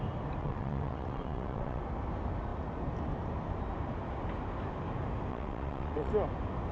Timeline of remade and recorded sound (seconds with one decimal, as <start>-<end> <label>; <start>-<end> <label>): 0.0-0.4 recorded; 0.4-1.8 remade; 1.8-5.3 recorded; 5.3-6.1 remade; 6.1-6.7 recorded